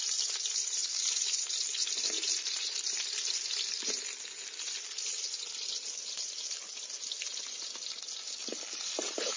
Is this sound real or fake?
real